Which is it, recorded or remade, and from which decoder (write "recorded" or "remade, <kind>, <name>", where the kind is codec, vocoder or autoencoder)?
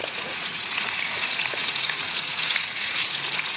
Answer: remade, vocoder, Vocos